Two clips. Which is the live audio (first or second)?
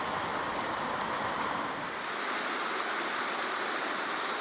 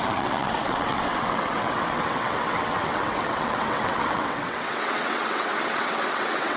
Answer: first